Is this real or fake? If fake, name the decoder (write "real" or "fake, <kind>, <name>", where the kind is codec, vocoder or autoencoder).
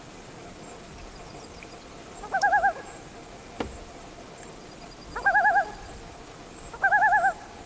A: real